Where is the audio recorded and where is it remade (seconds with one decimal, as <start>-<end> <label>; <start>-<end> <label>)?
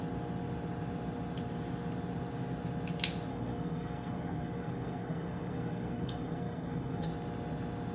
0.0-3.3 recorded; 3.3-7.1 remade; 7.1-7.9 recorded